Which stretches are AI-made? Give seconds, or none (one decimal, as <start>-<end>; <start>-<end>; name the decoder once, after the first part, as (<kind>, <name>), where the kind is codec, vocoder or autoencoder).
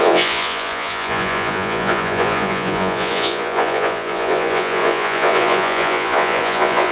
0.0-6.9 (vocoder, Vocos)